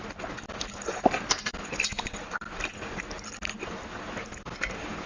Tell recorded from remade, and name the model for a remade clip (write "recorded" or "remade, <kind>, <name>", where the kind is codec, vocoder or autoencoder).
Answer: recorded